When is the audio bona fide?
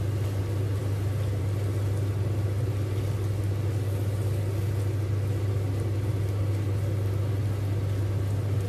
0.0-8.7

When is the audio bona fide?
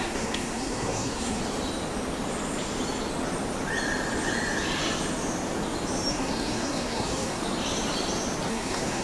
1.4-6.1; 7.4-8.5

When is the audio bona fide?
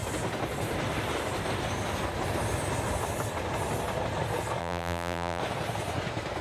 0.0-4.6; 5.4-6.4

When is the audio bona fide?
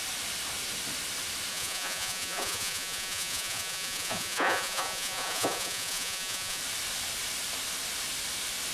0.0-1.5; 6.6-8.7